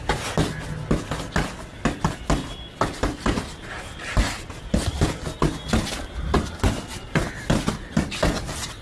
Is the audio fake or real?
real